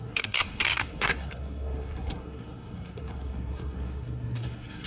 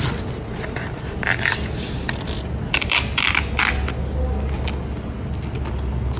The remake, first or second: first